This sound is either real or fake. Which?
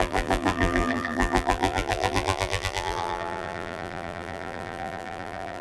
fake